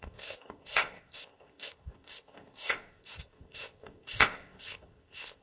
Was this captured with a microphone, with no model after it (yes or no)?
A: no